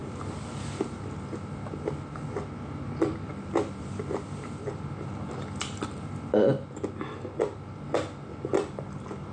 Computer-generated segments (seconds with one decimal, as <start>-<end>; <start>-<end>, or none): none